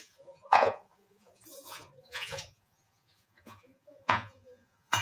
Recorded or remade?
remade